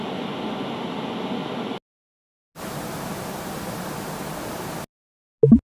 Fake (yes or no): no